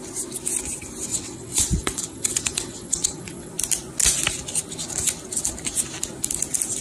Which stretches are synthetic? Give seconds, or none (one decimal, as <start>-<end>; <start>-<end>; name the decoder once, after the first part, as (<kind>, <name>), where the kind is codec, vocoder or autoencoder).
1.1-3.5 (vocoder, WaveNeXt)